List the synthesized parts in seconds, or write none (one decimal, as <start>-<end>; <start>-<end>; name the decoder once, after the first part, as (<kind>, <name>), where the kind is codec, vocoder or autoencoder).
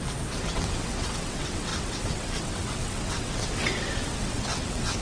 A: 0.0-5.0 (vocoder, WaveNeXt)